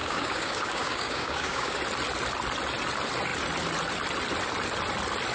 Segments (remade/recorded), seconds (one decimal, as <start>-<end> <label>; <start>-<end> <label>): 0.0-1.8 remade; 1.8-5.3 recorded

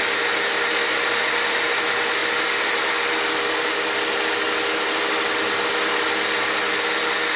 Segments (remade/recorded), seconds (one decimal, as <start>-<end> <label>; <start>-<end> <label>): 0.0-7.4 recorded